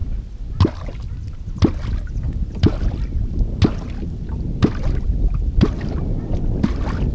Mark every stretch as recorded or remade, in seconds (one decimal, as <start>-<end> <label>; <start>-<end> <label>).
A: 0.0-7.1 recorded